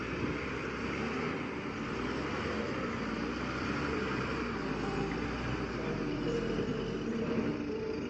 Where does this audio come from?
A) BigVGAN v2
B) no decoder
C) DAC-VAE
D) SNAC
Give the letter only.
B